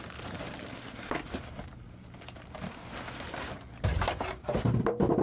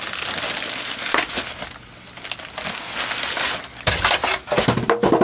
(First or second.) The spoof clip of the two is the first